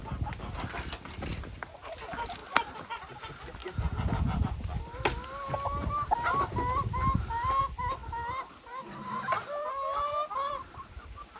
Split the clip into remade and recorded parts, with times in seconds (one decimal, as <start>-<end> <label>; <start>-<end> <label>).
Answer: 0.0-11.4 recorded